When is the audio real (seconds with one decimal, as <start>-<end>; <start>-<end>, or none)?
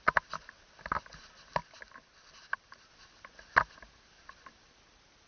0.0-5.3